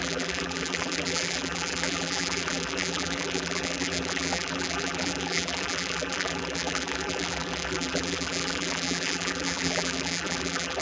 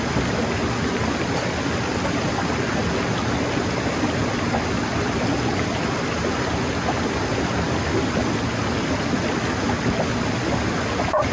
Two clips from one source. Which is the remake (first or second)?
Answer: first